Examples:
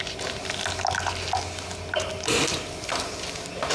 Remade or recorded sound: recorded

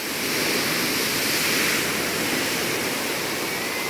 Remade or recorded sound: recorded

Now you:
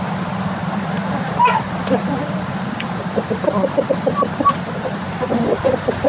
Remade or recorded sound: remade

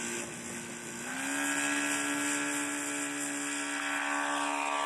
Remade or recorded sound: recorded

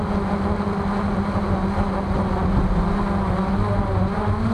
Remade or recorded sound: recorded